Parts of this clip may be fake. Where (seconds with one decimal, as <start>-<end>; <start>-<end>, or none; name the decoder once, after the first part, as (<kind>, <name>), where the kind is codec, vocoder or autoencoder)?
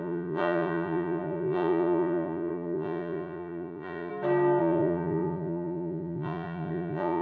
0.0-4.1 (vocoder, Vocos); 4.6-7.2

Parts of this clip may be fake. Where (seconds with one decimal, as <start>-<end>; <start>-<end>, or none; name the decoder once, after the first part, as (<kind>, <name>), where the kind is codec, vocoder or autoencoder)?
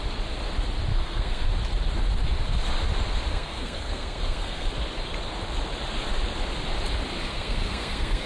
0.9-1.5 (codec, SNAC); 3.3-4.7; 7.3-8.3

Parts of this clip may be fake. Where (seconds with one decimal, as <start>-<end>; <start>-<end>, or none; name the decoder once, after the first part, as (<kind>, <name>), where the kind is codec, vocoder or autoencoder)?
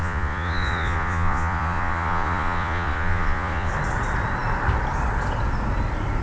0.0-3.7 (vocoder, Vocos)